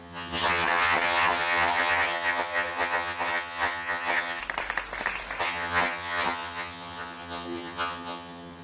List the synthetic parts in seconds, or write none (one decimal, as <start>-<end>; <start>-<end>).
0.0-4.4; 5.4-8.6